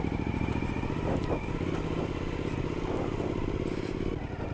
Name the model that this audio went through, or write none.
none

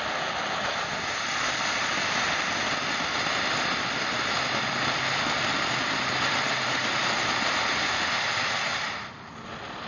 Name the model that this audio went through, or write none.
none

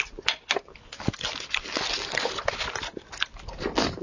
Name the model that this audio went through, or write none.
none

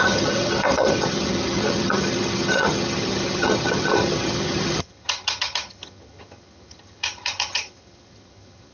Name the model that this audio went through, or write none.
vocoder, HiFi-GAN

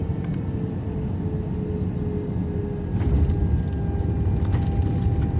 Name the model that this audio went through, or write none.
none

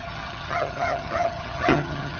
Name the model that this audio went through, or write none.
vocoder, HiFi-GAN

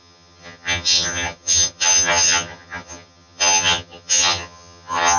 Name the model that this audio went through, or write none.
vocoder, HiFi-GAN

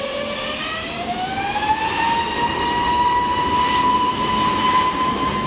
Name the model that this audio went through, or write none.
none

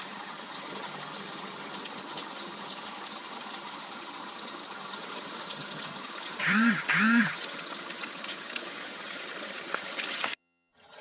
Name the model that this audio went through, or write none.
vocoder, HiFi-GAN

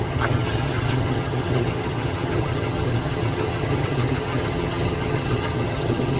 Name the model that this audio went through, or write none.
vocoder, HiFi-GAN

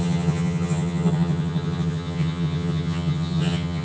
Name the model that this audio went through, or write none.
vocoder, HiFi-GAN